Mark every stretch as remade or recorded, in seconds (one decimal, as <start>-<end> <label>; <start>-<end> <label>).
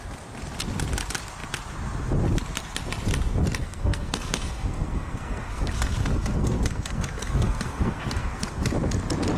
0.0-3.6 recorded; 3.6-8.6 remade; 8.6-9.4 recorded